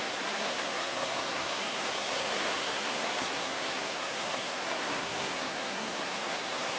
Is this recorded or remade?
remade